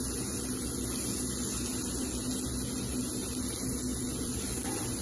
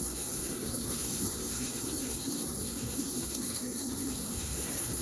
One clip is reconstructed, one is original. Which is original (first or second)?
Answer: first